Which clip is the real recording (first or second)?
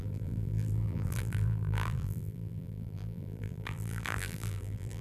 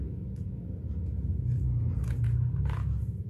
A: second